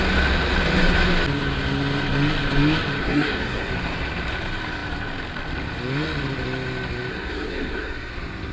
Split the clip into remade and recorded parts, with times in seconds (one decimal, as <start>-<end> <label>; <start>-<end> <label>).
0.0-3.0 recorded; 3.0-3.7 remade; 3.7-7.1 recorded; 7.1-8.1 remade; 8.1-8.5 recorded